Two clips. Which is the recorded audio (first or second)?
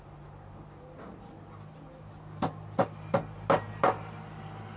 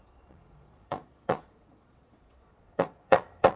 first